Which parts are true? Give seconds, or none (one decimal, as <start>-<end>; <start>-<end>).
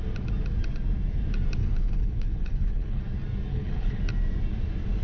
0.0-1.6; 3.0-3.5; 4.0-5.0